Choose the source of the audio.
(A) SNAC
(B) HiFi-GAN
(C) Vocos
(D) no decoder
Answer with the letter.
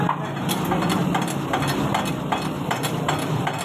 D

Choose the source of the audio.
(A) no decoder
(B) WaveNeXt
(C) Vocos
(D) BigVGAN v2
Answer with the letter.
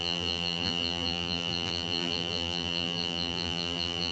D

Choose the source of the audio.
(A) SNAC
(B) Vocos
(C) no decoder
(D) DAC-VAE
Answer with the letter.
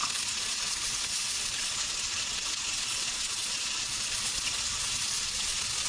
B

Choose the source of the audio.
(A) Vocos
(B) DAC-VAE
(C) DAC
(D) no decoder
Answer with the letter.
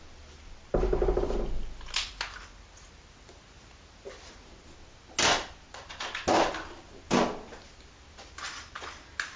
D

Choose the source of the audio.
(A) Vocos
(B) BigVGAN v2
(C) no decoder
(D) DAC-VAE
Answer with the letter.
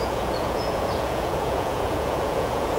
A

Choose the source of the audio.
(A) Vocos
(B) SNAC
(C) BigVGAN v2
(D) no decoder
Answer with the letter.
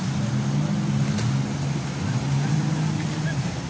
D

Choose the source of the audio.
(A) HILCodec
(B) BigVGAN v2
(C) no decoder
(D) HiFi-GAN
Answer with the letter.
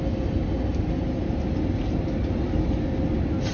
C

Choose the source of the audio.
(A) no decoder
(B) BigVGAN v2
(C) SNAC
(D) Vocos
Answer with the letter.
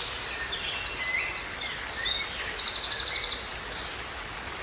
A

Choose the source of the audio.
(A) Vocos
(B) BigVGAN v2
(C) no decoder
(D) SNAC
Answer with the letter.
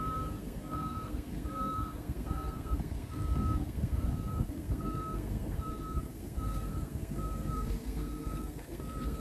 D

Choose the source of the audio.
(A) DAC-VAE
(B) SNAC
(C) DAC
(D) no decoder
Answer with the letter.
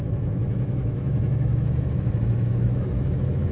A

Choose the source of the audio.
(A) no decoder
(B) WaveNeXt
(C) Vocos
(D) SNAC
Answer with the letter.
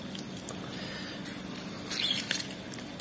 A